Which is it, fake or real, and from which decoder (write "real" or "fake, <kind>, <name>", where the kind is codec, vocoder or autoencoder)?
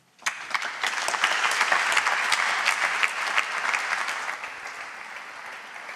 real